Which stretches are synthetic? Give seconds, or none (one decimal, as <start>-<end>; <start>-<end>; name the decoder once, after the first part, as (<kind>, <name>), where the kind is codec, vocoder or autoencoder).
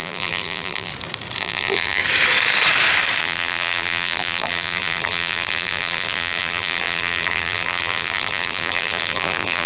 0.0-0.9 (vocoder, BigVGAN v2); 1.4-2.0; 3.2-9.7